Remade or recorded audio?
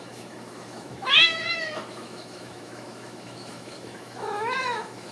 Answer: remade